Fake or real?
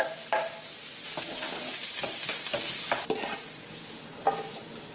real